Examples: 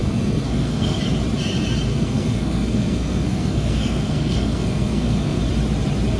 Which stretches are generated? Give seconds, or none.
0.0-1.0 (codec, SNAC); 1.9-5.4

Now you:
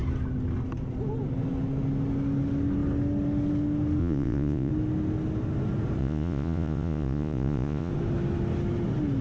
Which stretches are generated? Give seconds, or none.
4.0-4.7 (vocoder, Vocos); 6.0-7.9

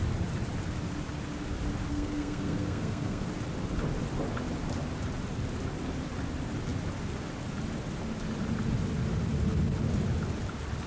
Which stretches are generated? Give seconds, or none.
1.9-3.3 (codec, SNAC)

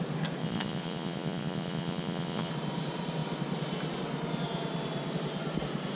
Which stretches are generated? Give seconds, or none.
0.4-2.5 (vocoder, Vocos)

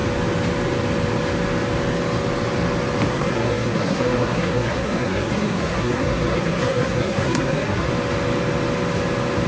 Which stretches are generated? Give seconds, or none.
3.1-7.9 (codec, SNAC)

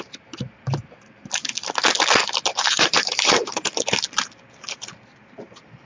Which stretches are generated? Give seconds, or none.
2.6-3.7 (vocoder, BigVGAN v2)

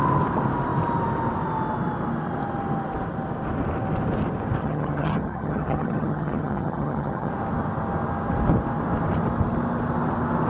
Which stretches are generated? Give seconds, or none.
4.6-7.3 (vocoder, HiFi-GAN)

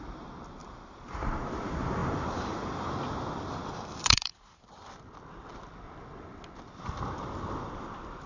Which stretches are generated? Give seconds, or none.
0.6-1.2 (vocoder, BigVGAN v2); 2.0-2.9; 3.5-4.7